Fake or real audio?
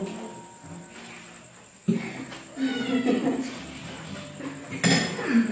real